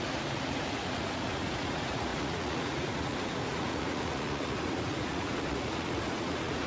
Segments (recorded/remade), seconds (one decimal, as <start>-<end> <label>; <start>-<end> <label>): 0.0-6.7 remade

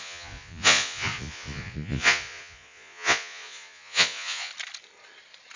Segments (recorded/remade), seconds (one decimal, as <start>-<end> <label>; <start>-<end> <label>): 0.0-4.5 remade; 4.5-5.6 recorded

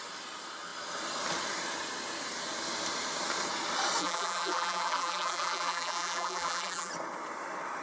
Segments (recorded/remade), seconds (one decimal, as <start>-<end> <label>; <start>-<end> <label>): 0.0-4.0 recorded; 4.0-6.9 remade; 6.9-7.8 recorded

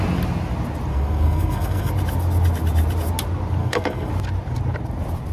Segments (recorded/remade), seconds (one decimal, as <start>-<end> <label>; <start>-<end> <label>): 0.0-0.9 recorded; 0.9-1.9 remade; 1.9-3.6 recorded; 3.6-4.1 remade; 4.1-5.3 recorded

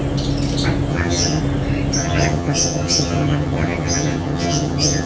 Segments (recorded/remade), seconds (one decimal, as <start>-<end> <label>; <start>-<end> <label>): 0.0-0.9 recorded; 0.9-1.4 remade; 1.4-2.0 recorded; 2.0-5.1 remade

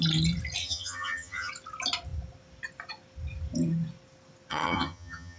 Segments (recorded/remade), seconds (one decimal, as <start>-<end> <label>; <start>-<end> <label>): 0.0-0.6 recorded; 0.6-1.5 remade; 1.5-4.5 recorded; 4.5-5.4 remade

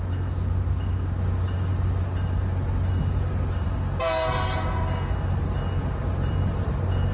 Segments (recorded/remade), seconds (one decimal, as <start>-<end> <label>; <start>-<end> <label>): 0.0-7.1 recorded

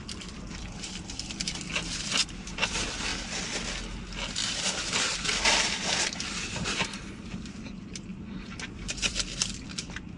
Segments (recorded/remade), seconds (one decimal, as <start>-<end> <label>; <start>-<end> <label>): 0.0-3.1 remade; 3.1-4.9 recorded; 4.9-10.2 remade